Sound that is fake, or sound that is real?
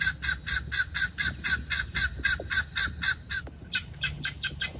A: real